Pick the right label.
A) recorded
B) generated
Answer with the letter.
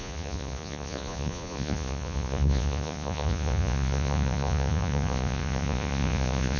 B